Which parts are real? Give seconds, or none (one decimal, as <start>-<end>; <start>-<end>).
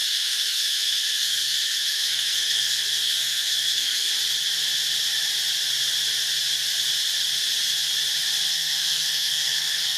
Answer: 4.1-8.5